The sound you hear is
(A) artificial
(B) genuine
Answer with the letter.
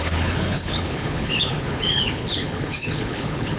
A